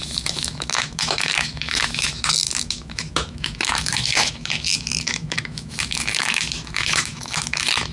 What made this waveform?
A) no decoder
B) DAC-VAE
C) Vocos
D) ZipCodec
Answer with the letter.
B